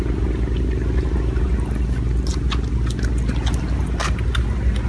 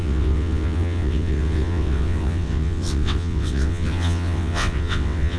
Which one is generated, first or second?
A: second